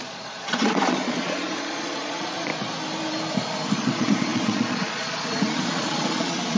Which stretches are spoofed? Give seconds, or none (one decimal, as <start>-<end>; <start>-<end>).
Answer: 0.0-2.5; 3.7-6.6